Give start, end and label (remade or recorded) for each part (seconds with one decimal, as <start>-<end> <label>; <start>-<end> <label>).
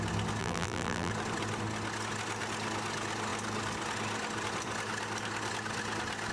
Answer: 0.0-0.4 recorded; 0.4-1.1 remade; 1.1-6.3 recorded